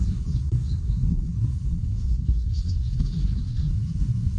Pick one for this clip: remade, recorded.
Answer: remade